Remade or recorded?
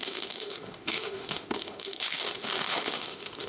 remade